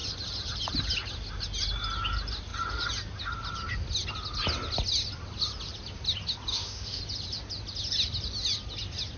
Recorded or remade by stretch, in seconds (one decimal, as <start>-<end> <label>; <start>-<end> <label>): 0.0-6.5 recorded; 6.5-7.0 remade; 7.0-9.2 recorded